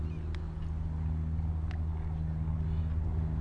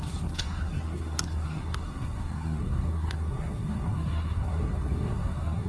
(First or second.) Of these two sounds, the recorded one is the first